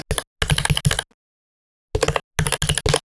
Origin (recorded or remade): recorded